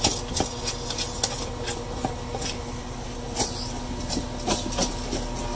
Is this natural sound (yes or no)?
yes